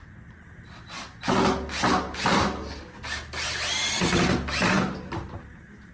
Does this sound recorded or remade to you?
recorded